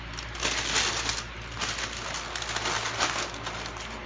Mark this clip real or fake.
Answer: real